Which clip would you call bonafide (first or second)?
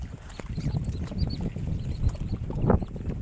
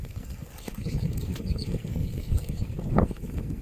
first